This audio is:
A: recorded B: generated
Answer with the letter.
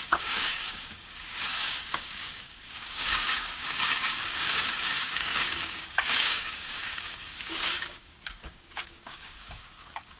B